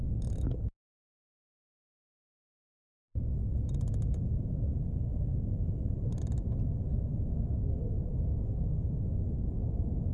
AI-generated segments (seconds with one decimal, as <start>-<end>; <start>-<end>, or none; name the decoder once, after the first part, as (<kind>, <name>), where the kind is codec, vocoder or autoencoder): 5.1-6.2 (vocoder, BigVGAN v2)